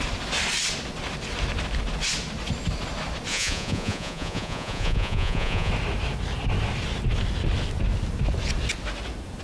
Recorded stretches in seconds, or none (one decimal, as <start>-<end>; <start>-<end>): 0.0-3.3; 5.7-9.4